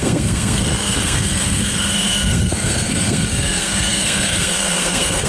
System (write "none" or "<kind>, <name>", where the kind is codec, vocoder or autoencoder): codec, SNAC